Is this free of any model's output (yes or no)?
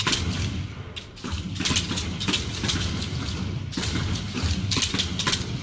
yes